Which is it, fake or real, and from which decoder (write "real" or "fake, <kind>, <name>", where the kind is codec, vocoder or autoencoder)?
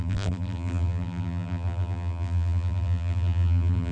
fake, vocoder, BigVGAN v2